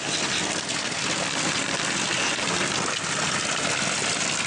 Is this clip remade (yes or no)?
no